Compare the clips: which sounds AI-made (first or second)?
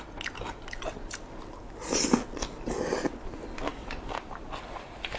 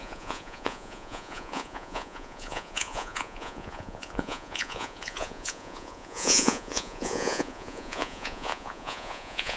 second